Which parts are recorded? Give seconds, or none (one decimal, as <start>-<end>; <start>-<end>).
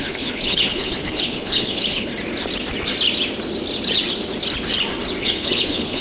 2.1-5.2